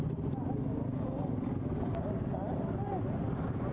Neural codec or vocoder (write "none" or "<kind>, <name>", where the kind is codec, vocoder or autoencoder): none